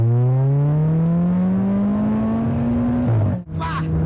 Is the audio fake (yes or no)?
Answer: no